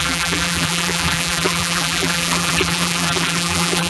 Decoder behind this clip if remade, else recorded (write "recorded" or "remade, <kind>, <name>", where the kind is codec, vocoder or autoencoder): remade, vocoder, BigVGAN v2